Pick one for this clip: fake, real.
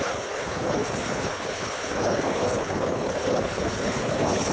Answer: fake